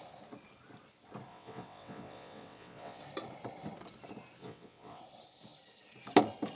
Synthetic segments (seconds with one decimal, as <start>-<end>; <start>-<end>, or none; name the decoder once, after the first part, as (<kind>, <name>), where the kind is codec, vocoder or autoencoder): 1.3-3.0 (vocoder, WaveNeXt); 4.4-5.0